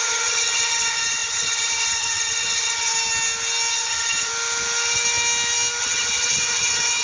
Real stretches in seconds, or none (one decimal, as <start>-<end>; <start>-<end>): 2.9-3.7; 4.3-5.8